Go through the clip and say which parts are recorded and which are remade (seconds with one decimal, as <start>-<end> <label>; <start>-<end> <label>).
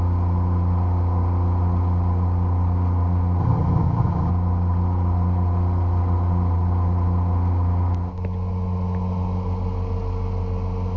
0.0-3.4 recorded; 3.4-4.3 remade; 4.3-11.0 recorded